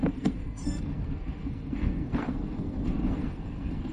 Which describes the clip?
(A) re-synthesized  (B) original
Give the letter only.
A